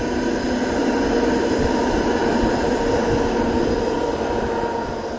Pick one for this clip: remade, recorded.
recorded